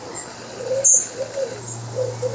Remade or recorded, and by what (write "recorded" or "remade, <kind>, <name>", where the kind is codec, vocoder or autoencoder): recorded